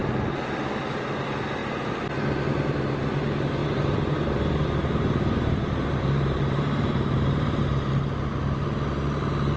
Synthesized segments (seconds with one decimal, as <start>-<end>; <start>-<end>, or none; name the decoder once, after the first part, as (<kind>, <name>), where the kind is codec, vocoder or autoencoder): 0.0-0.6 (vocoder, BigVGAN v2); 3.6-7.6